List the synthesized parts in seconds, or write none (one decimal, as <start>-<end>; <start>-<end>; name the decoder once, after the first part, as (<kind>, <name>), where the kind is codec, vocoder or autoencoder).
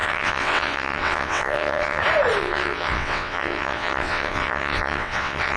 0.0-2.0 (vocoder, WaveNeXt); 2.4-5.6